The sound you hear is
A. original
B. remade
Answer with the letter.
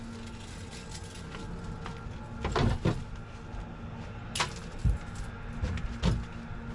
A